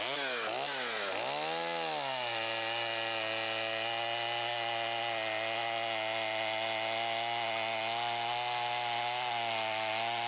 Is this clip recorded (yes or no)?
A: yes